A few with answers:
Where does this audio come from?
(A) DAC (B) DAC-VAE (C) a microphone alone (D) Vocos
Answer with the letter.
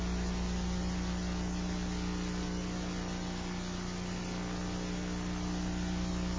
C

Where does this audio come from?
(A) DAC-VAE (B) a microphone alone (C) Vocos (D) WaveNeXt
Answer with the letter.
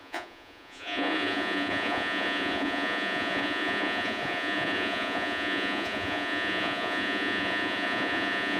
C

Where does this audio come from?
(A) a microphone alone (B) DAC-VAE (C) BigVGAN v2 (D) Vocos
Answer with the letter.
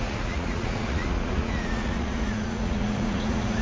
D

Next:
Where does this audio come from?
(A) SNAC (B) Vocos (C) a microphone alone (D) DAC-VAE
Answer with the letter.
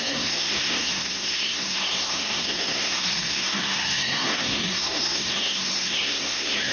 A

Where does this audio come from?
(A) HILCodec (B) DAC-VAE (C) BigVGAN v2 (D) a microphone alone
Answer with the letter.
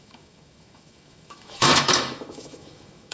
B